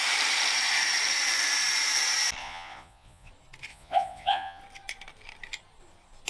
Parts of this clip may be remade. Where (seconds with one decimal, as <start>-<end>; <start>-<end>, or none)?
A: 2.4-3.3; 3.7-4.6